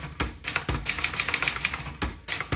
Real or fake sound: real